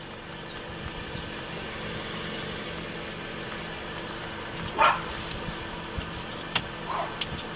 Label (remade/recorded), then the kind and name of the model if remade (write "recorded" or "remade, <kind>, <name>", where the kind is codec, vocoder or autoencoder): recorded